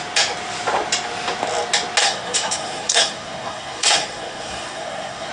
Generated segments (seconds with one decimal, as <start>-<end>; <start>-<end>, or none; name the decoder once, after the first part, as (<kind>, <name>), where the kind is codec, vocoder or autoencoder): 2.0-5.3 (codec, SNAC)